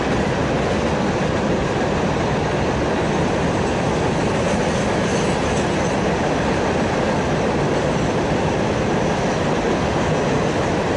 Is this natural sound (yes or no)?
yes